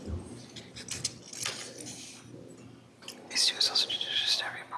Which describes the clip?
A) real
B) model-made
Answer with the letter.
A